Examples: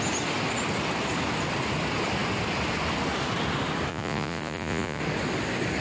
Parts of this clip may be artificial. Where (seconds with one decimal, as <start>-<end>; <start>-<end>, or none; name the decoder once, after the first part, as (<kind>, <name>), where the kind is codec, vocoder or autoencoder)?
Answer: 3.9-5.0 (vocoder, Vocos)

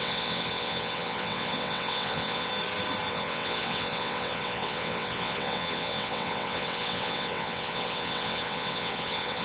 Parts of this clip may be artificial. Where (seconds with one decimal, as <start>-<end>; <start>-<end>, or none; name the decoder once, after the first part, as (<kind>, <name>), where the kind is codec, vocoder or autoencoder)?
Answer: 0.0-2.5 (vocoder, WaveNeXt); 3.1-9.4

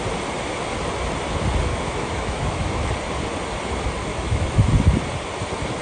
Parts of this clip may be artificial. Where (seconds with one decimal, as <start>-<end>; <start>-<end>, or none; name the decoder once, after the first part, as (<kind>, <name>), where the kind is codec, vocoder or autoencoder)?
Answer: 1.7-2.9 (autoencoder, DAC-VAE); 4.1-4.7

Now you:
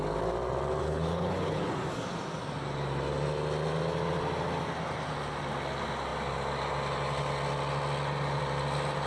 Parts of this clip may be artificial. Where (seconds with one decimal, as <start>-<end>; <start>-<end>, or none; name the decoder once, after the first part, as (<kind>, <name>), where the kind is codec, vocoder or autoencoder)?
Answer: 0.8-1.6 (codec, HILCodec)

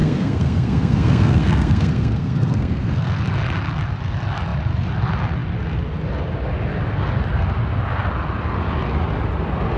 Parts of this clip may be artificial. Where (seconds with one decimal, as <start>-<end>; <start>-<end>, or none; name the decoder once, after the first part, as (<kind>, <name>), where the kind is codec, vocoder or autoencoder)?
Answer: 0.0-3.2 (codec, SNAC)

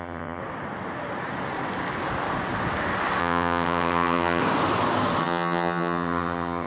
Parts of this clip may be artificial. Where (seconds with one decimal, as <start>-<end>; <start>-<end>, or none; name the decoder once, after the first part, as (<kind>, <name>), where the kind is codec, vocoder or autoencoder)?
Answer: 0.0-0.4 (vocoder, HiFi-GAN); 3.2-4.4; 5.2-6.7